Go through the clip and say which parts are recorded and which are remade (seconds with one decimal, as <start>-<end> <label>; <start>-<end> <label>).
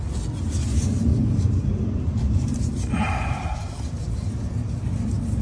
0.0-1.1 recorded; 1.1-4.3 remade; 4.3-5.4 recorded